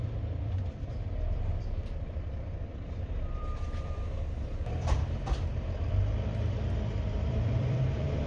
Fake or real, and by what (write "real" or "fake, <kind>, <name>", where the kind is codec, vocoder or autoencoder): fake, vocoder, BigVGAN v2